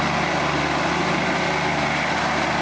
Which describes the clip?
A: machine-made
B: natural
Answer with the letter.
B